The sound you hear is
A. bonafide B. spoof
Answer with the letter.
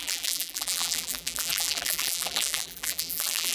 B